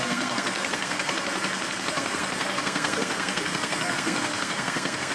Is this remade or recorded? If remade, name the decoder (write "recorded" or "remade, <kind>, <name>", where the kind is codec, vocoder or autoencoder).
remade, codec, SNAC